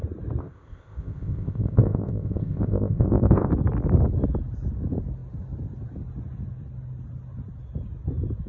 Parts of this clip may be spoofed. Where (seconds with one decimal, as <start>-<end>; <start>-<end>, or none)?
0.4-3.5